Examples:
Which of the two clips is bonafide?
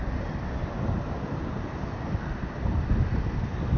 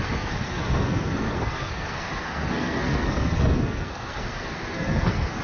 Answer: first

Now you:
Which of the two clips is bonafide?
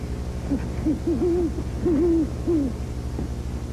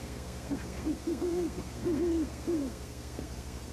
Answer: first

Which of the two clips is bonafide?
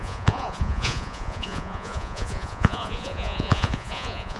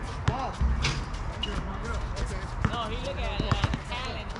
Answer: second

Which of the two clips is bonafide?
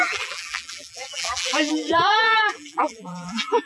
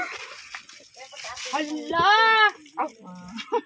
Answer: second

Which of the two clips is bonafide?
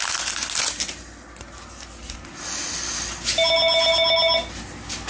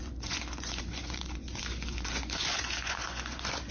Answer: first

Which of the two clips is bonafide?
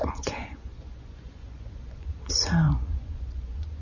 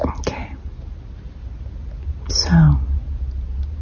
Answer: second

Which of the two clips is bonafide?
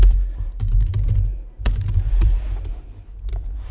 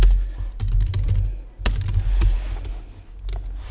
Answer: second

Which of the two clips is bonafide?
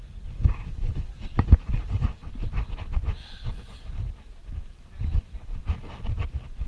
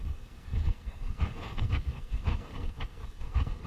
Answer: first